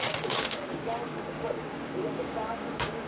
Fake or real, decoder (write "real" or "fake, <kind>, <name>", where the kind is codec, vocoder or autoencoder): fake, codec, DAC